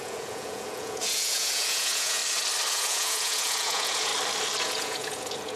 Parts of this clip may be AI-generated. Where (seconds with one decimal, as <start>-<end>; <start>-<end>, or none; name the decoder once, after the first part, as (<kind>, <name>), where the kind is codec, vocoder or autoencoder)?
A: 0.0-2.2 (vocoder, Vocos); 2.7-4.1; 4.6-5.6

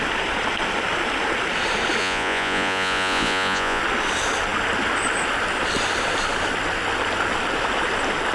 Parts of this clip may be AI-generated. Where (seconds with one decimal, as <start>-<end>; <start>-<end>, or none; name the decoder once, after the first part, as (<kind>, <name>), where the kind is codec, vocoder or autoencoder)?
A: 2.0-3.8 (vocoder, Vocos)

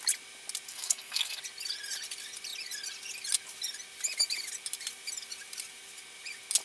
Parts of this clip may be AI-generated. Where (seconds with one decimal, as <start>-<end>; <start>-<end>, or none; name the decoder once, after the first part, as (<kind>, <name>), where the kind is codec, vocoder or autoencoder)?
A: 0.7-1.4 (codec, SNAC)

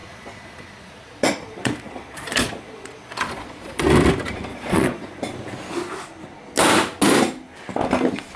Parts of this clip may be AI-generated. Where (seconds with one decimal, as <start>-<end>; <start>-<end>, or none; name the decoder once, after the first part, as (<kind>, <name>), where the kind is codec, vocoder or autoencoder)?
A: 0.0-3.8 (vocoder, Vocos); 4.5-5.2